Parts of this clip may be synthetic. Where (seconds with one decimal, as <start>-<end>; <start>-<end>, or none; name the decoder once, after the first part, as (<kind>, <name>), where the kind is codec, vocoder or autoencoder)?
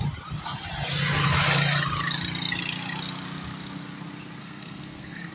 4.4-5.3 (codec, SNAC)